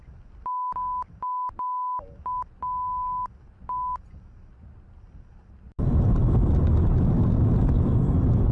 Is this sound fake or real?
real